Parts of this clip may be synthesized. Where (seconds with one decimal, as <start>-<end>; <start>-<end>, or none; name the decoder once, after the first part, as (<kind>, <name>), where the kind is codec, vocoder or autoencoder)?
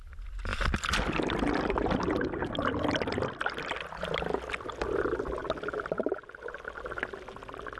none